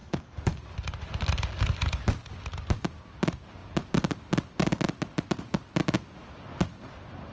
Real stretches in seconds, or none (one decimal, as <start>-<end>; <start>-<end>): 0.6-7.3